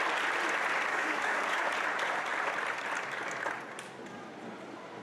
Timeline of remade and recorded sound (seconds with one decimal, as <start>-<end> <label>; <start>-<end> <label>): 0.0-0.9 recorded; 0.9-1.7 remade; 1.7-5.0 recorded